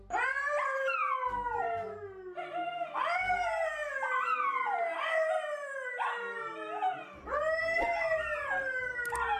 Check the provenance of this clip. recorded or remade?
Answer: recorded